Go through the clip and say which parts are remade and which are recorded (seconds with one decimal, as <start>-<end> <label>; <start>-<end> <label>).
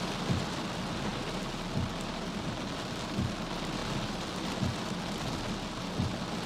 0.0-6.5 recorded